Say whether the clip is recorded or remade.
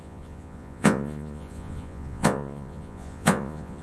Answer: remade